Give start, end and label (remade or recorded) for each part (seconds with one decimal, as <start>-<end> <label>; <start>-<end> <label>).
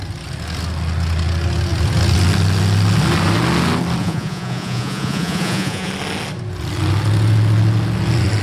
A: 0.0-4.0 recorded; 4.0-5.9 remade; 5.9-8.4 recorded